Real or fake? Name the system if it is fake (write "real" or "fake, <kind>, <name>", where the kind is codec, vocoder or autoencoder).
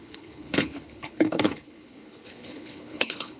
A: fake, codec, HILCodec